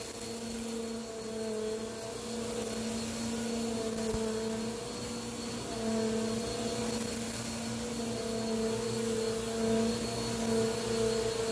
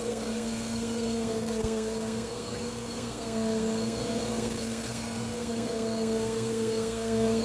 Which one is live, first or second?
first